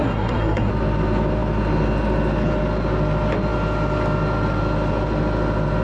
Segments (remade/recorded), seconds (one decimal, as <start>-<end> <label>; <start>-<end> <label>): 0.0-0.7 remade; 0.7-5.8 recorded